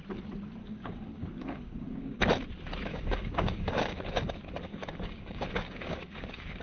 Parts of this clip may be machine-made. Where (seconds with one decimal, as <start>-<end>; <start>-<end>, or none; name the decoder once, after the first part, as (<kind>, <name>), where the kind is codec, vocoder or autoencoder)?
0.6-2.2 (codec, DAC); 2.9-4.3; 4.7-6.6